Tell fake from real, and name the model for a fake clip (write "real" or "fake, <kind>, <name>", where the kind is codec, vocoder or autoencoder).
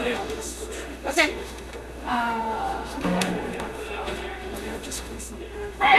fake, autoencoder, DAC-VAE